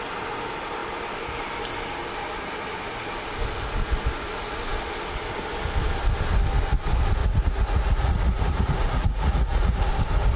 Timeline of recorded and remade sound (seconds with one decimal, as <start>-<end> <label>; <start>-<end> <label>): 0.0-7.2 recorded; 7.2-9.9 remade; 9.9-10.4 recorded